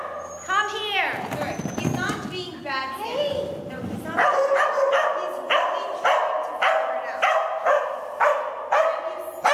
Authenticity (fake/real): real